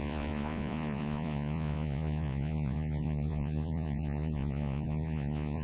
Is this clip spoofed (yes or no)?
yes